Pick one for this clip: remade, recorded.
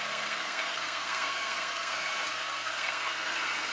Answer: remade